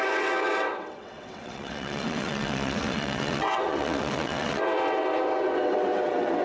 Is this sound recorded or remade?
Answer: remade